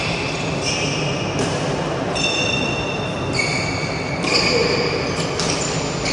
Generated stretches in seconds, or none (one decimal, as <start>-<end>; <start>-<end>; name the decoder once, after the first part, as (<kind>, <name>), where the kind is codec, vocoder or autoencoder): none